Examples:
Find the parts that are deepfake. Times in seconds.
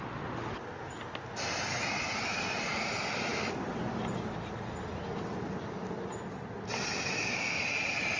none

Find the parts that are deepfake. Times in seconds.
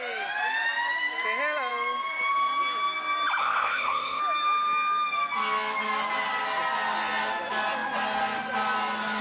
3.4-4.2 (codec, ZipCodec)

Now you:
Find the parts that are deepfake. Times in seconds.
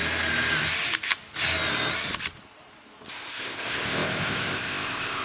3.1-5.2 (codec, ZipCodec)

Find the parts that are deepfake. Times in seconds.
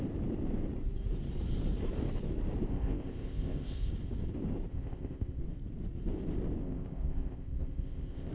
2.7-3.9 (codec, ZipCodec); 4.7-5.4; 6.6-8.3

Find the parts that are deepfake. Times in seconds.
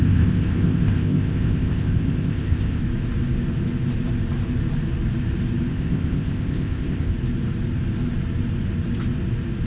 0.0-2.8 (codec, ZipCodec); 5.7-7.1